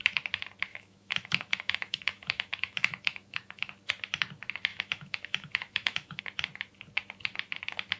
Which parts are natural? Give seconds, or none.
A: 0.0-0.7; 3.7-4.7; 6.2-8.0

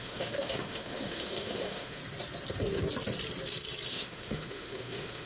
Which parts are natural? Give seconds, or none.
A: 2.0-3.9

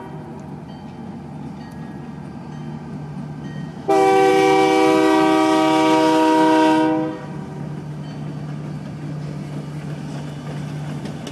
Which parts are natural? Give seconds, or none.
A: 0.0-3.7; 4.3-11.3